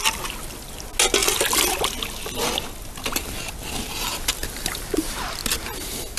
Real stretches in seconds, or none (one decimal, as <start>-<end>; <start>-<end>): 0.0-6.2